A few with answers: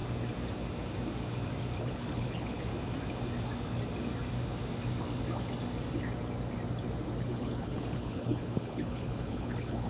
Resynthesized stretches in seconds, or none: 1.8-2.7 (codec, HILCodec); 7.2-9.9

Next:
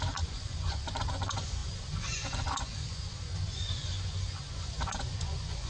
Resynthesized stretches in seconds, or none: 0.0-5.7 (vocoder, Vocos)